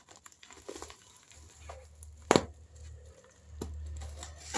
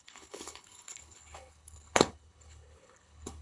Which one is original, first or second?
first